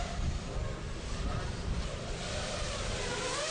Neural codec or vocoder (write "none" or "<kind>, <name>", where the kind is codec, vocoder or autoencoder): vocoder, BigVGAN v2